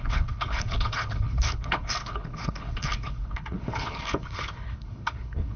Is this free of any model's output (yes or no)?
no